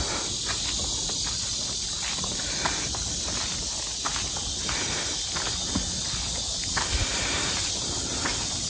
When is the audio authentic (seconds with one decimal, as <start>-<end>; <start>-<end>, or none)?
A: 0.0-8.7

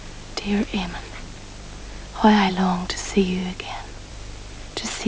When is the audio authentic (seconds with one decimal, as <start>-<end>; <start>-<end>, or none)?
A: 0.0-5.1

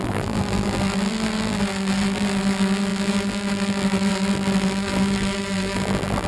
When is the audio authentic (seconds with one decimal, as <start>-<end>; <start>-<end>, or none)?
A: none